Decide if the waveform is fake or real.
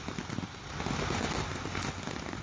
real